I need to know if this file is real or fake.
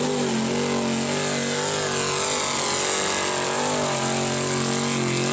real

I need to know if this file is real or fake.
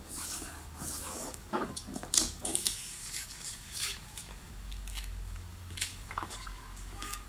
fake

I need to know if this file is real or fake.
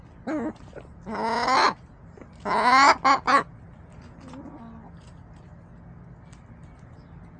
real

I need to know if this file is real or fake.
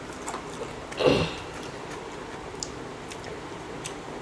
real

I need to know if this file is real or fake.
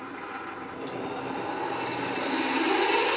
real